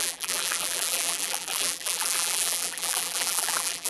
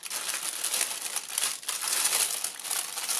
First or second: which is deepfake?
first